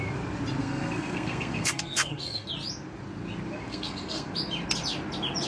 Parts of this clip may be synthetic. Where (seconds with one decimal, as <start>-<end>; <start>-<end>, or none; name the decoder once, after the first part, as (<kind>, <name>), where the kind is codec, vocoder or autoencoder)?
0.6-2.5 (codec, SNAC); 3.7-4.3